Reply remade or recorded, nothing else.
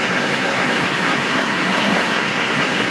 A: remade